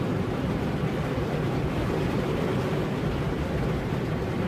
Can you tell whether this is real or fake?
real